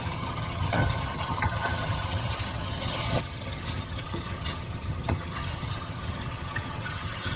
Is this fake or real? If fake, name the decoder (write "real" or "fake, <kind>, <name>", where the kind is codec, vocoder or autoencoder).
fake, vocoder, HiFi-GAN